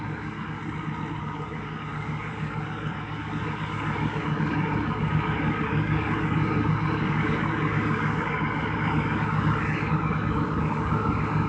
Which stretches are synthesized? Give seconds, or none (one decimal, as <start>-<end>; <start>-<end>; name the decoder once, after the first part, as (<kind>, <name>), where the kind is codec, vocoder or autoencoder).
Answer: 0.0-0.6 (codec, DAC); 1.2-11.5